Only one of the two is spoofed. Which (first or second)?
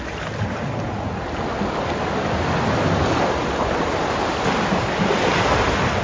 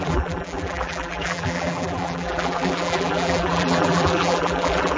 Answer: second